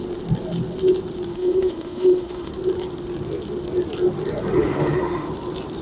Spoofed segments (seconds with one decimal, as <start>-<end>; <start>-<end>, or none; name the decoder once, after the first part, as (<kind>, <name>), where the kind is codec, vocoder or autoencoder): 1.3-2.5 (autoencoder, DAC-VAE); 4.6-5.3